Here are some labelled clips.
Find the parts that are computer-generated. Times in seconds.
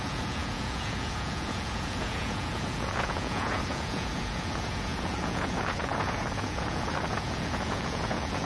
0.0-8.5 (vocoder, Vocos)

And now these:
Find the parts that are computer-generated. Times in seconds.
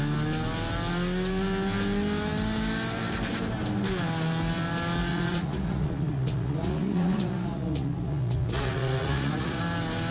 5.1-9.6 (vocoder, Vocos)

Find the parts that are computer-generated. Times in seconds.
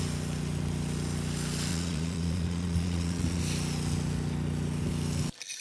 1.7-3.4 (vocoder, Vocos)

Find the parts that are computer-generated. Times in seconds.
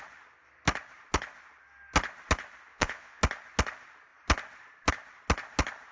2.7-3.2 (vocoder, Vocos)